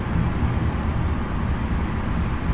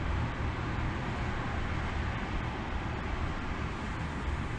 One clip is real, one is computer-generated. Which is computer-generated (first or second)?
second